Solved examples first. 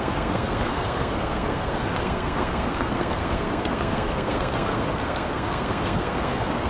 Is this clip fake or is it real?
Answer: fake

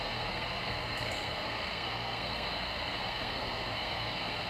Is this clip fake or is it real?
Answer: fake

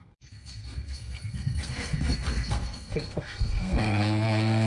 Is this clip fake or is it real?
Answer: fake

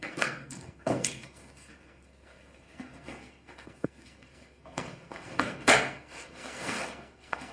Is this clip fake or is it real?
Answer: fake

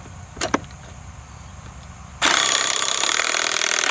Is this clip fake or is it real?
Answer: real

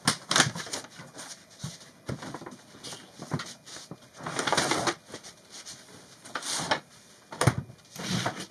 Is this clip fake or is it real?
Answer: real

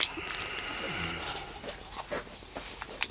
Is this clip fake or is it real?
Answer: real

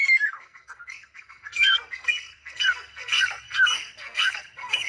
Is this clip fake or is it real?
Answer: fake